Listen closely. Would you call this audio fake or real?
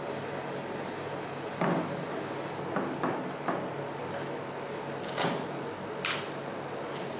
real